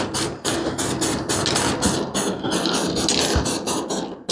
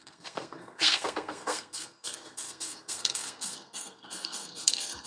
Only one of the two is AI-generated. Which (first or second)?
second